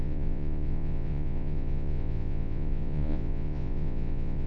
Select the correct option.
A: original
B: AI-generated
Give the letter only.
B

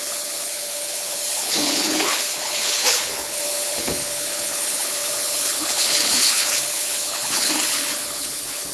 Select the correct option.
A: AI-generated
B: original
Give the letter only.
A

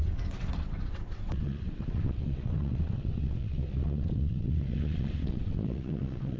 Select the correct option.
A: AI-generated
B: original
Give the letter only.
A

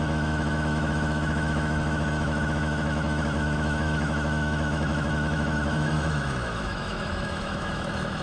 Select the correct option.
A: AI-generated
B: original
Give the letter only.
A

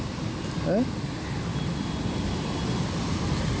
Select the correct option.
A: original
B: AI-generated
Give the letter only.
A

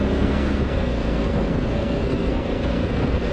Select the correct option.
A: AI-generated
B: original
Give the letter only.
A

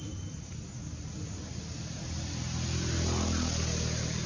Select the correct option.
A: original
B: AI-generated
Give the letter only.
A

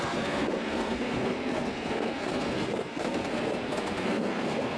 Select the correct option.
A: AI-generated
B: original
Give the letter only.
A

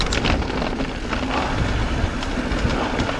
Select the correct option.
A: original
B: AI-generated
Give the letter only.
A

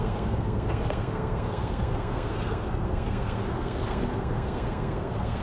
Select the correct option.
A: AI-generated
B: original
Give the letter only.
A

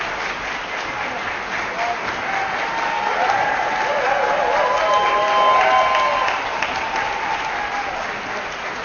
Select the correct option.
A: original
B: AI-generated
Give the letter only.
A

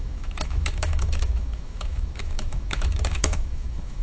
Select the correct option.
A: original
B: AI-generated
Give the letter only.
B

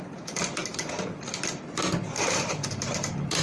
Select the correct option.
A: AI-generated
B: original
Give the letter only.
A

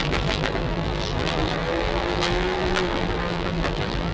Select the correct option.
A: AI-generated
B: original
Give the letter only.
A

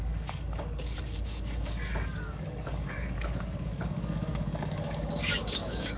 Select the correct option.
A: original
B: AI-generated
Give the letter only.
B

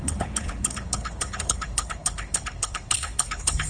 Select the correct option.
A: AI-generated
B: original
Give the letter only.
A